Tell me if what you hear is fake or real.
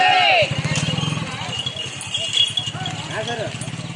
real